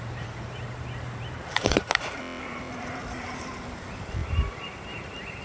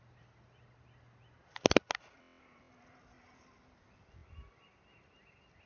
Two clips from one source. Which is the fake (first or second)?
first